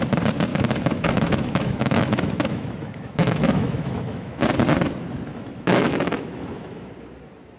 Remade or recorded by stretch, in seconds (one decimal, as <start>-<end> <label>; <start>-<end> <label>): 0.0-0.5 recorded; 0.5-4.4 remade; 4.4-5.3 recorded; 5.3-6.9 remade; 6.9-7.6 recorded